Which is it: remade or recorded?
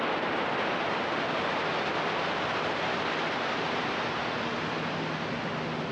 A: recorded